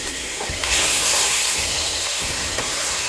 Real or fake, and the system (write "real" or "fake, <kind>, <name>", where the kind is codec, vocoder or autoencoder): fake, codec, SNAC